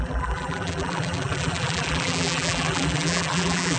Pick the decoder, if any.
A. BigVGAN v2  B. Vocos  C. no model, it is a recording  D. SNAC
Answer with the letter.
A